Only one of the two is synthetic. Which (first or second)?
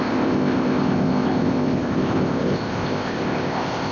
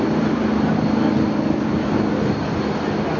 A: first